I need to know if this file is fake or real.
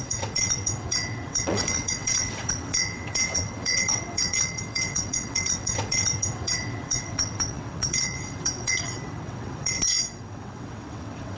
fake